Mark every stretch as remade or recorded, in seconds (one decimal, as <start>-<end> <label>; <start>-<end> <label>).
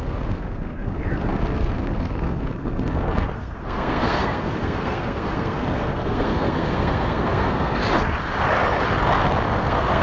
0.0-7.8 remade; 7.8-9.6 recorded; 9.6-10.0 remade